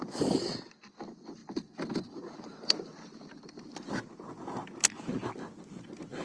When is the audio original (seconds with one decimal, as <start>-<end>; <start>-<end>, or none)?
0.0-6.2